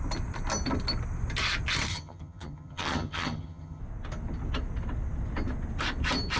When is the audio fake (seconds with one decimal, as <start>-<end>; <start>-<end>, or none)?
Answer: 1.9-3.8